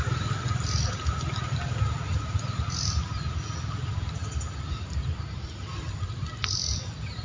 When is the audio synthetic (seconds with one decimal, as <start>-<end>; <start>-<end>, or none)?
none